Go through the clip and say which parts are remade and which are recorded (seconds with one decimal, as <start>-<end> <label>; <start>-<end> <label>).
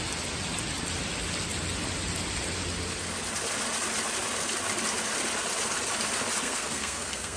0.0-6.4 recorded; 6.4-7.4 remade